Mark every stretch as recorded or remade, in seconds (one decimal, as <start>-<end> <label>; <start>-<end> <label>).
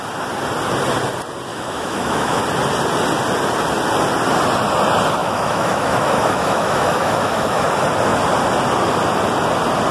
0.0-1.5 recorded; 1.5-2.4 remade; 2.4-5.2 recorded; 5.2-7.7 remade; 7.7-9.9 recorded